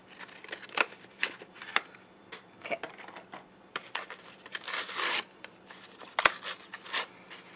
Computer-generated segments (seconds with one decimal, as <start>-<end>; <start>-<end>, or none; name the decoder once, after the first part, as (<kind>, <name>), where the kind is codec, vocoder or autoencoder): 0.0-6.7 (vocoder, BigVGAN v2)